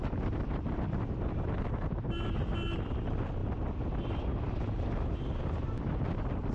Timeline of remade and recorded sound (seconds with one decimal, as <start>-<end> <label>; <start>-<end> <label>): 0.0-6.5 recorded